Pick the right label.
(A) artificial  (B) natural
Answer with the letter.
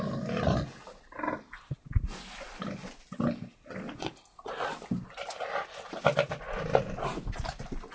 B